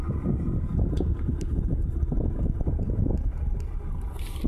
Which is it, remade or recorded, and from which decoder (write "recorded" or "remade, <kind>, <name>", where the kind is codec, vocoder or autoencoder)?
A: recorded